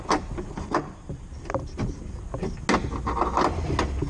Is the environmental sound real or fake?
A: real